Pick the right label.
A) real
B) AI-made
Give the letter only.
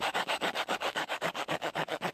B